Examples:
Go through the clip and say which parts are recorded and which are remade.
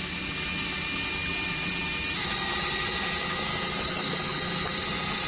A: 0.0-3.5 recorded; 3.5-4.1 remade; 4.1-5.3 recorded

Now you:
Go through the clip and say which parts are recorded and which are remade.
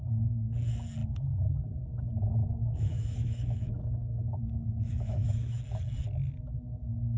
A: 0.0-2.4 recorded; 2.4-5.6 remade; 5.6-7.2 recorded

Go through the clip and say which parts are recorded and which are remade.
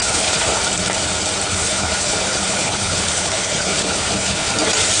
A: 0.0-0.6 remade; 0.6-1.5 recorded; 1.5-4.5 remade; 4.5-5.0 recorded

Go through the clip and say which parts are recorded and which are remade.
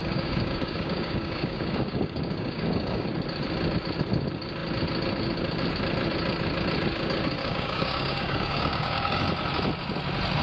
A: 0.0-3.1 remade; 3.1-7.4 recorded; 7.4-9.2 remade; 9.2-10.4 recorded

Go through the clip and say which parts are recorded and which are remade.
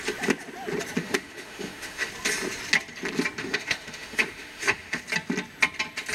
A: 0.0-1.0 recorded; 1.0-2.1 remade; 2.1-3.4 recorded; 3.4-5.0 remade; 5.0-6.1 recorded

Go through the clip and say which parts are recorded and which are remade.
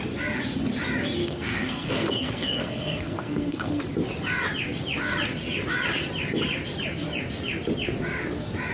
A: 0.0-1.2 recorded; 1.2-3.8 remade; 3.8-8.7 recorded